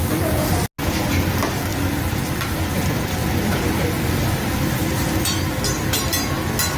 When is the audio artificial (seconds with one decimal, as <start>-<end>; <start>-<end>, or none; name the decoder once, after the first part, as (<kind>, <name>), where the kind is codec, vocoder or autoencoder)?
0.0-0.5 (vocoder, BigVGAN v2); 1.7-5.5